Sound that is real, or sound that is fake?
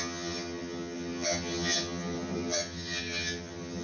fake